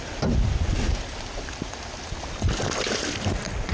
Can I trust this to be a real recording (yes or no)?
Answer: yes